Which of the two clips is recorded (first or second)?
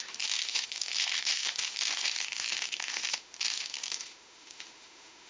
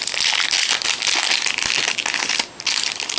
second